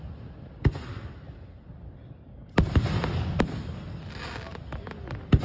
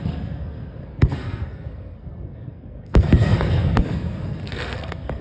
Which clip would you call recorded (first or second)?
first